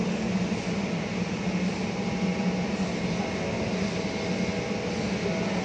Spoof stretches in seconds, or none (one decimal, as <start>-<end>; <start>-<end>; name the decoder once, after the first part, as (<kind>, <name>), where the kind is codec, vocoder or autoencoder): none